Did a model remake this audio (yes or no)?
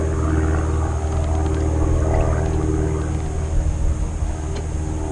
no